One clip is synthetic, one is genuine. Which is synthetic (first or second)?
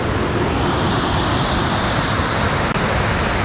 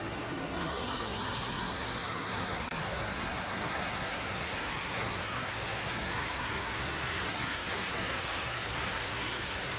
second